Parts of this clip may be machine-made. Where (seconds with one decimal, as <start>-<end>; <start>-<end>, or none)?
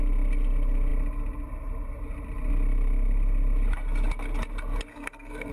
4.9-5.5